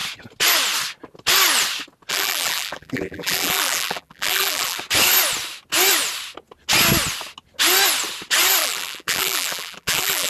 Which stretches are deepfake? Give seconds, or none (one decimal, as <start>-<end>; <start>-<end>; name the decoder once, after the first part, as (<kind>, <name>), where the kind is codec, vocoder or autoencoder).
2.1-4.8 (vocoder, BigVGAN v2); 8.6-10.3